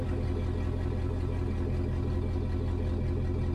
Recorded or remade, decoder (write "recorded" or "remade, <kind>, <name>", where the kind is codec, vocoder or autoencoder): recorded